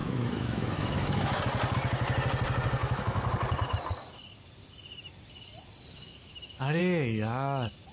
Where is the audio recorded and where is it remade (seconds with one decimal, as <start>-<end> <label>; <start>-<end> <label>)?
0.0-1.4 remade; 1.4-2.8 recorded; 2.8-3.3 remade; 3.3-5.9 recorded; 5.9-6.8 remade; 6.8-7.9 recorded